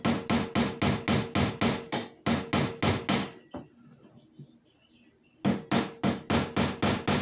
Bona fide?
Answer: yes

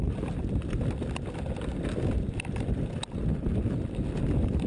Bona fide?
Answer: yes